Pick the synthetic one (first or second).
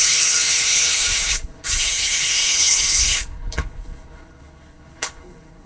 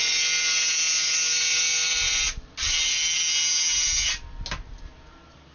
first